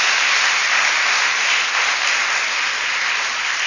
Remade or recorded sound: recorded